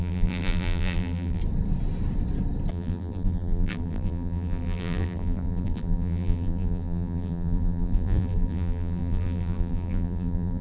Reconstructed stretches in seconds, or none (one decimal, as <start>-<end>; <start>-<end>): 0.0-1.4; 2.7-10.6